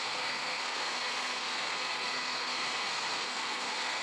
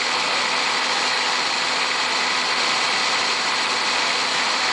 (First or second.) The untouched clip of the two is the second